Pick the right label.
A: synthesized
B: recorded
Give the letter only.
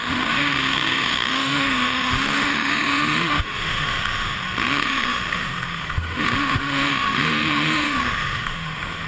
A